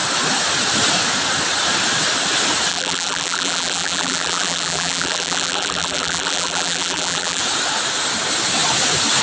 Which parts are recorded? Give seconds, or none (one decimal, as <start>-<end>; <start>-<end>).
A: 0.0-2.7; 7.4-9.2